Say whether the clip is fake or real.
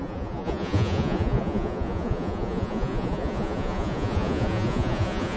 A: fake